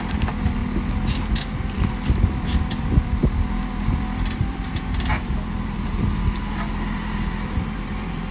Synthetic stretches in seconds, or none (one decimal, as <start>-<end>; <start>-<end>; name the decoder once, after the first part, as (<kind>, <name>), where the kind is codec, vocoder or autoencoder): 0.0-0.6 (vocoder, BigVGAN v2); 1.6-8.3